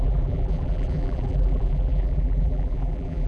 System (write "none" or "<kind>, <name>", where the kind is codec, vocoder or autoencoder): vocoder, BigVGAN v2